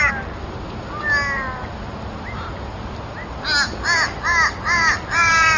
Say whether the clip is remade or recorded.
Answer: recorded